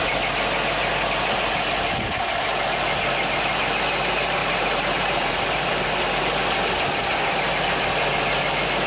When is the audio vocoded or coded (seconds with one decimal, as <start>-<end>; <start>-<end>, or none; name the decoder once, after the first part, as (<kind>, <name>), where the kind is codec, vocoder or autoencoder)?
4.4-6.2 (vocoder, BigVGAN v2)